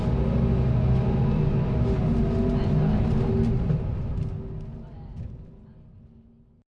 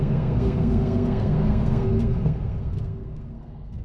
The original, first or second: first